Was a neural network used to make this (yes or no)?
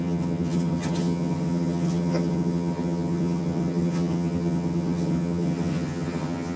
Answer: yes